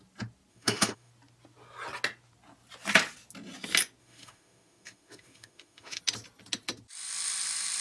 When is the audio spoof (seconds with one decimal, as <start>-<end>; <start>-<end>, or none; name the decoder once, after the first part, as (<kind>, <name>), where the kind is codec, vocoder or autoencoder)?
0.5-1.1 (autoencoder, DAC-VAE); 4.0-6.0